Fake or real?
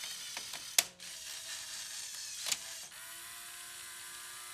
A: real